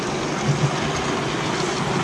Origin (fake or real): real